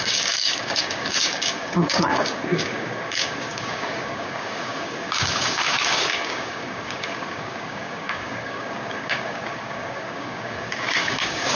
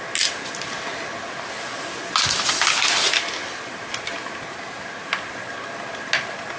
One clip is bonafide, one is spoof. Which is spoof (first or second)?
first